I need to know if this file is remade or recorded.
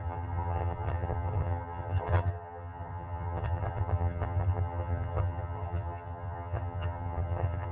remade